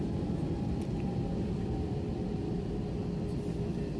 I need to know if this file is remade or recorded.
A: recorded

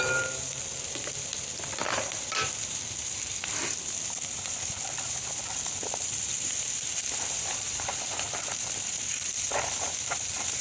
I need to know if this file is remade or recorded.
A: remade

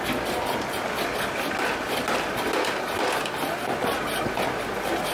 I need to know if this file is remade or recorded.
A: recorded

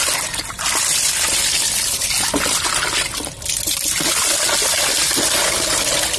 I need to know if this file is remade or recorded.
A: recorded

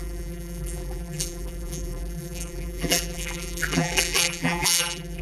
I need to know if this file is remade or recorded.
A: remade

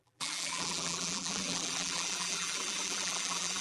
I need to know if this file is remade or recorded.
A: remade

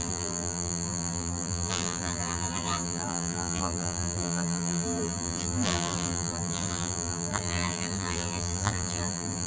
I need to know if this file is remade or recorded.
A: remade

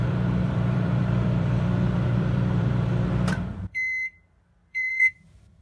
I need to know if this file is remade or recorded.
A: remade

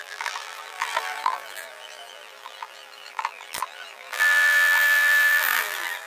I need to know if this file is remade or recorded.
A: remade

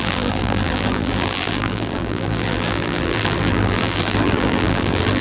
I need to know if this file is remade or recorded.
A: remade